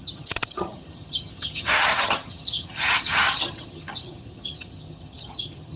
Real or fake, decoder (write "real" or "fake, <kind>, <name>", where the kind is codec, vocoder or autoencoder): fake, vocoder, HiFi-GAN